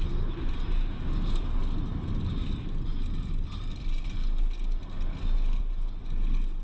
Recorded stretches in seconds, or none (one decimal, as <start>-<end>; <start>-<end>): 0.0-6.6

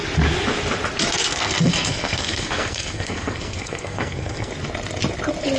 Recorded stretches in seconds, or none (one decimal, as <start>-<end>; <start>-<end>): 0.0-1.1; 4.5-5.6

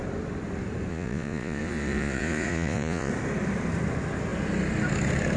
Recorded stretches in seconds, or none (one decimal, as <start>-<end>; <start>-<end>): 0.0-0.9; 3.1-5.4

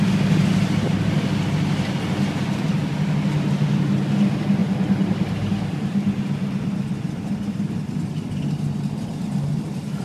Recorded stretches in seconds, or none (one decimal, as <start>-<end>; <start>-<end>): 0.0-10.0